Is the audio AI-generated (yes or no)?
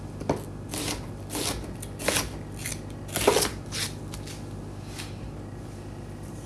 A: no